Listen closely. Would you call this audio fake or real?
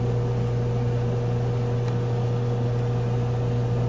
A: real